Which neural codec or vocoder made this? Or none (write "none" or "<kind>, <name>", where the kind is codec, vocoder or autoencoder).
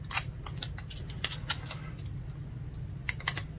none